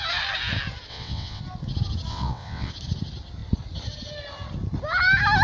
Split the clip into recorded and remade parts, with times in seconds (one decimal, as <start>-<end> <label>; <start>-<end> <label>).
0.0-0.9 recorded; 0.9-1.4 remade; 1.4-2.1 recorded; 2.1-2.7 remade; 2.7-5.4 recorded